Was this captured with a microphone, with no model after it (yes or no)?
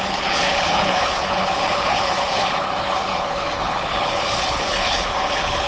no